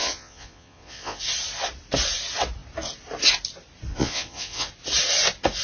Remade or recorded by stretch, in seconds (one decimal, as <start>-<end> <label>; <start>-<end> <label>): 0.0-1.2 remade; 1.2-3.9 recorded; 3.9-4.7 remade; 4.7-5.6 recorded